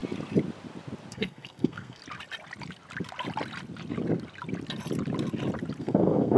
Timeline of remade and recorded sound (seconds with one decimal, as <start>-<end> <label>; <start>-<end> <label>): 0.0-1.1 recorded; 1.1-2.0 remade; 2.0-5.8 recorded; 5.8-6.4 remade